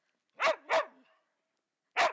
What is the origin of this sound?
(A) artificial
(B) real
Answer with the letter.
B